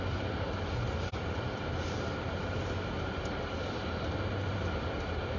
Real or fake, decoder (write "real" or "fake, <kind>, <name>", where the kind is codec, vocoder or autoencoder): real